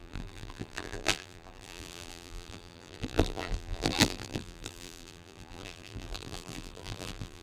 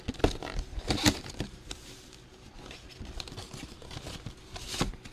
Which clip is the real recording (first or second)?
second